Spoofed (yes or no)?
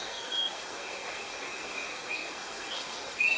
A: yes